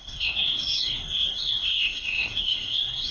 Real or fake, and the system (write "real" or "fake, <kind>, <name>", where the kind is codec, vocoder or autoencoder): fake, codec, SNAC